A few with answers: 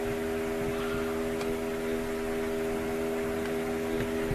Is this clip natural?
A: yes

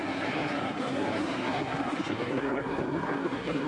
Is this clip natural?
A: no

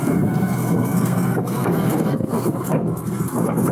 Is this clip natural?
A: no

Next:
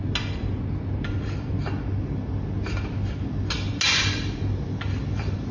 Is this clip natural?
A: yes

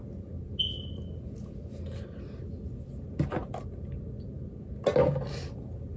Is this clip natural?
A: yes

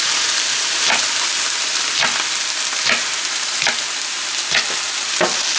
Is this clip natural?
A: yes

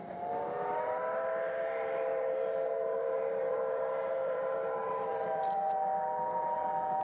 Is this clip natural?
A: no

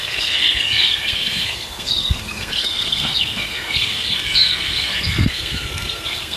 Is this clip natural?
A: no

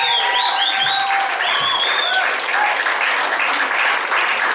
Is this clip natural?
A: yes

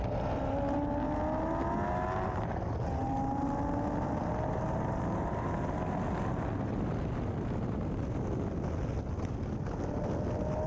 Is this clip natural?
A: yes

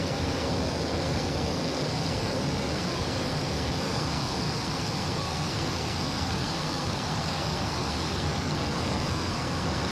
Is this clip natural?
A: no